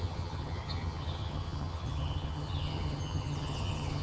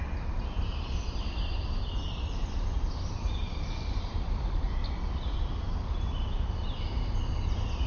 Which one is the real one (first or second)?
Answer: second